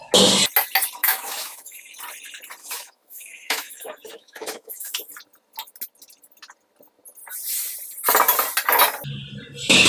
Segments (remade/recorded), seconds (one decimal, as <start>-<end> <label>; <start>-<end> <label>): 0.0-1.0 recorded; 1.0-1.9 remade; 1.9-2.6 recorded; 2.6-5.1 remade; 5.1-9.9 recorded